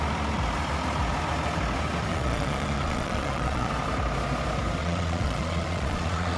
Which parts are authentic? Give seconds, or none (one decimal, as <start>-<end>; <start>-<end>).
0.0-2.1; 3.7-4.8